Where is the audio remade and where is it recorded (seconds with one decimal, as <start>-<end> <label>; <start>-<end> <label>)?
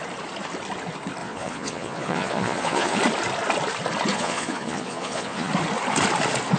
0.0-1.2 recorded; 1.2-3.0 remade; 3.0-4.1 recorded; 4.1-5.5 remade; 5.5-6.6 recorded